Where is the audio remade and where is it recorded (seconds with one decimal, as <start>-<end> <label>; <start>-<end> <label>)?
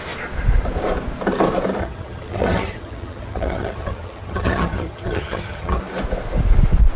0.0-1.8 recorded; 1.8-5.8 remade; 5.8-7.0 recorded